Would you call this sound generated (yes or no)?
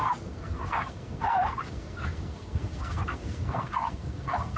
yes